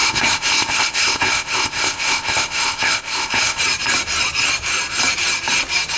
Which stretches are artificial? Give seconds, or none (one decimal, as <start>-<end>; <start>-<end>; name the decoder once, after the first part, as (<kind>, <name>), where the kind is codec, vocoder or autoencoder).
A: 0.0-3.6 (codec, ZipCodec)